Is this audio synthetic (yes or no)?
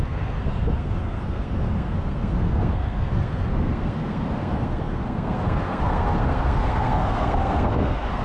yes